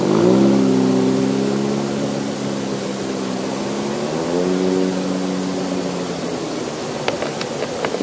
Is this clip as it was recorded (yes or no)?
yes